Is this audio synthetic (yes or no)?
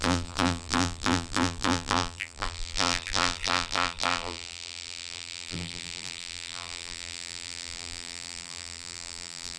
yes